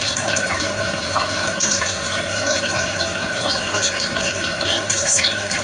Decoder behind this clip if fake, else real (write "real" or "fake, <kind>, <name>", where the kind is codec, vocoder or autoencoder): fake, codec, SNAC